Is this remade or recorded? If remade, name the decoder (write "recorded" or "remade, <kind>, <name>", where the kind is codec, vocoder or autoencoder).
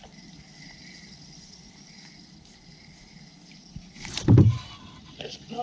recorded